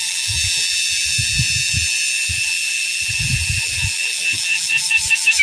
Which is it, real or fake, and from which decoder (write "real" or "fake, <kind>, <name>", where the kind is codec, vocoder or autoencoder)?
fake, vocoder, BigVGAN v2